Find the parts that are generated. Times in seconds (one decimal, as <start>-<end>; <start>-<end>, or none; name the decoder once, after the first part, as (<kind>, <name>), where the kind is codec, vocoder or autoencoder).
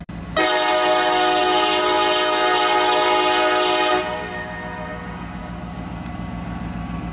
none